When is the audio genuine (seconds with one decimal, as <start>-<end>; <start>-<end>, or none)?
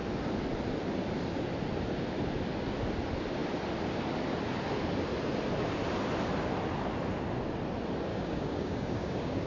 0.0-8.1